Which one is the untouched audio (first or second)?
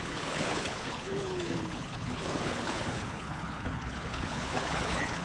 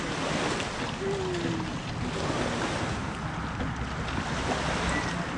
second